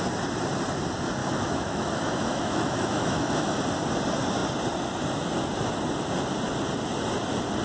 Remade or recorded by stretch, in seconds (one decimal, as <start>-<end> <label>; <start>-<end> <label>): 0.0-1.2 recorded; 1.2-3.6 remade; 3.6-7.6 recorded